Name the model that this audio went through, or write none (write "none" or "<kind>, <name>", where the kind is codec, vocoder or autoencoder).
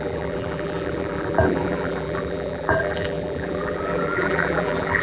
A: vocoder, BigVGAN v2